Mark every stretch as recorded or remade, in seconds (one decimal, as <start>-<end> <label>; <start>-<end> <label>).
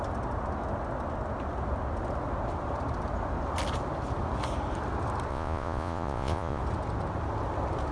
0.0-5.3 recorded; 5.3-6.6 remade; 6.6-7.9 recorded